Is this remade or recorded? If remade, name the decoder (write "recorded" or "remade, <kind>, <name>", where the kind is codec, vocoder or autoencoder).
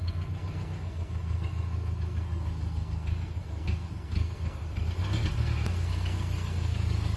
remade, codec, SNAC